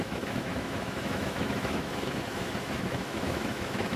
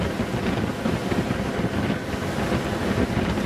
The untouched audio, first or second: second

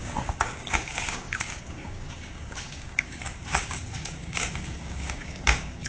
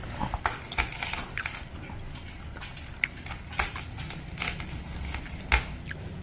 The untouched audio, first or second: second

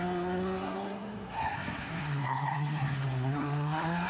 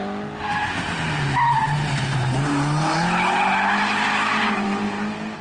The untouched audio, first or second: second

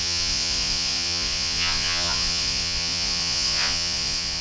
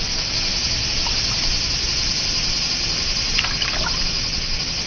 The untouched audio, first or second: second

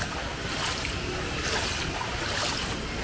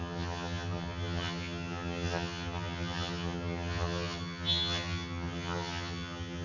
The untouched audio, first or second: first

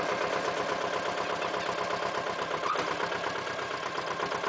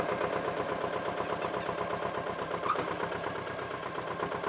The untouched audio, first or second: first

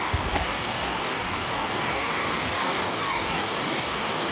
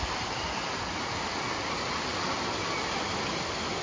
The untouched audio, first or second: second